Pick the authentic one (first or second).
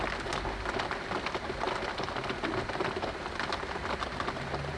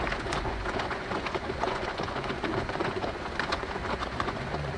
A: first